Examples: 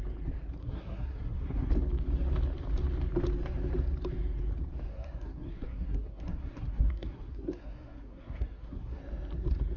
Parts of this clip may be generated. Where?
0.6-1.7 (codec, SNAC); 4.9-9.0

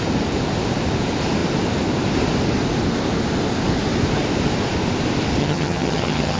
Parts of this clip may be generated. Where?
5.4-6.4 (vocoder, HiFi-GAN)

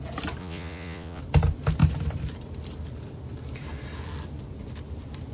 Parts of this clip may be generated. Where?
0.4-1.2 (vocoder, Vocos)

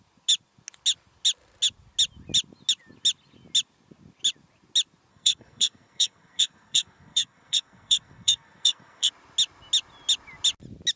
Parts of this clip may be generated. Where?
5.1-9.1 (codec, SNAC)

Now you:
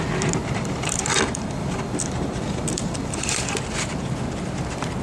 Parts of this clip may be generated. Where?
0.4-3.4 (vocoder, BigVGAN v2)

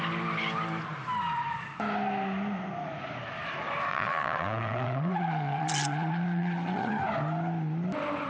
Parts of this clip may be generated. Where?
3.9-6.9 (vocoder, Vocos)

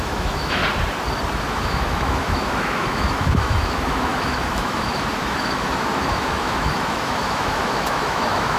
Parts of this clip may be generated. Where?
0.0-0.6 (autoencoder, DAC-VAE); 1.4-8.6

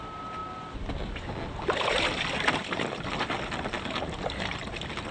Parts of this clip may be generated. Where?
none